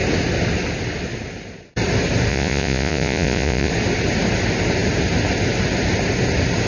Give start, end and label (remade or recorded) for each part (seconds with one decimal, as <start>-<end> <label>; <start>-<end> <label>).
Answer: 0.0-2.3 recorded; 2.3-3.7 remade; 3.7-6.7 recorded